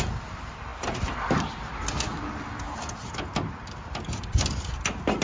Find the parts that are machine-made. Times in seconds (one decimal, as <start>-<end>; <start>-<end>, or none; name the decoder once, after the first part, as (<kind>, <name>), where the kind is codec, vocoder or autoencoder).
none